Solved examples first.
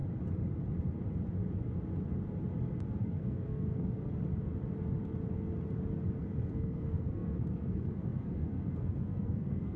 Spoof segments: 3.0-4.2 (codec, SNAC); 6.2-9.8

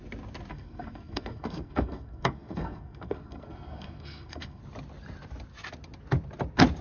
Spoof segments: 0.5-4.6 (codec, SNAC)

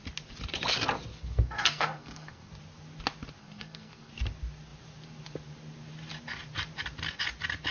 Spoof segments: 1.1-2.5 (codec, SNAC); 3.4-4.1

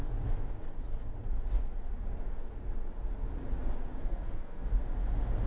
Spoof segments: 4.0-4.7 (codec, SNAC)

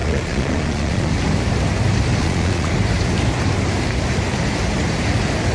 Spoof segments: 0.0-1.1 (vocoder, Vocos); 2.2-2.7

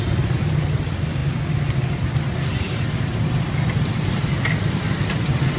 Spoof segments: none